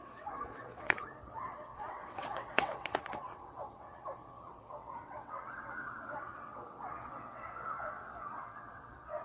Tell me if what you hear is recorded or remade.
remade